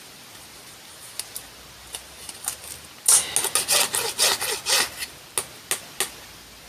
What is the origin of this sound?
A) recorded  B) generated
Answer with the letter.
A